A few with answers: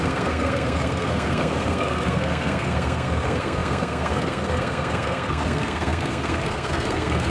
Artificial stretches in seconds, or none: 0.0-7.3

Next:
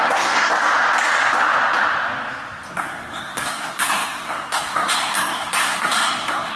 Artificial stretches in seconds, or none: 0.0-0.5; 2.7-6.6